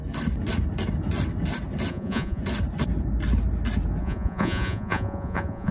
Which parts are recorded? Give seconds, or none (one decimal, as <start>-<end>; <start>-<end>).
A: 0.0-1.9; 2.4-4.0